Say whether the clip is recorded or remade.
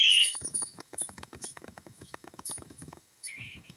remade